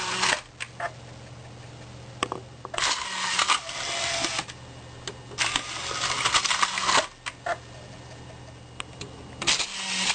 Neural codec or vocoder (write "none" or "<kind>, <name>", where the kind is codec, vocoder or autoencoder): none